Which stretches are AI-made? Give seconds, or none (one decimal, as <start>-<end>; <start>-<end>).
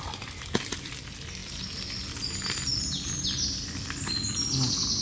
none